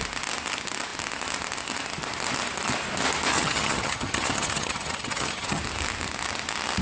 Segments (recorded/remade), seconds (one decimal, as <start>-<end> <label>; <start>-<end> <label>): 0.0-3.3 recorded; 3.3-5.6 remade; 5.6-6.8 recorded